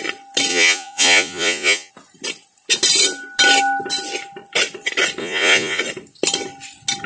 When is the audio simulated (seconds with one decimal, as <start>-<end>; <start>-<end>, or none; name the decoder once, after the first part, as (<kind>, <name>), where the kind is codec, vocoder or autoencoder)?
0.5-1.9 (vocoder, Vocos); 5.2-5.8